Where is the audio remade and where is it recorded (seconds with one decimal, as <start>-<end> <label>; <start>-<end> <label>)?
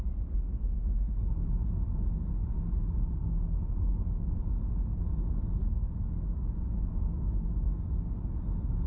0.0-2.8 recorded; 2.8-3.3 remade; 3.3-5.6 recorded; 5.6-7.9 remade; 7.9-8.9 recorded